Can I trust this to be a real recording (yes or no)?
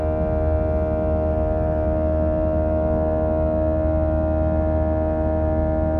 yes